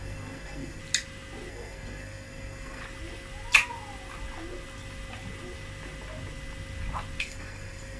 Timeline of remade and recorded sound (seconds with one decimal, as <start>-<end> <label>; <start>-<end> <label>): 0.0-0.8 remade; 0.8-1.5 recorded; 1.5-2.8 remade; 2.8-7.2 recorded; 7.2-8.0 remade